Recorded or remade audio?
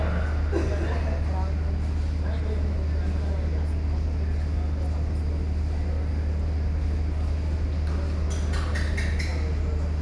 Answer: recorded